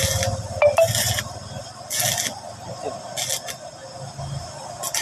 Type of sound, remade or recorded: recorded